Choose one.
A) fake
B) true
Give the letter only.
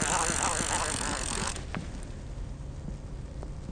B